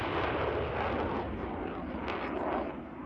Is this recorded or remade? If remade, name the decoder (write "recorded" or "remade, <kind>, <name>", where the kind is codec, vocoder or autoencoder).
recorded